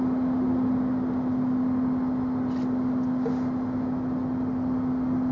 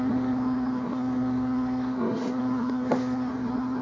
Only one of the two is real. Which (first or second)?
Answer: first